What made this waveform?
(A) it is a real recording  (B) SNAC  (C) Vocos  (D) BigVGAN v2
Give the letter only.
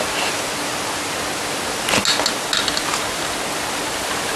A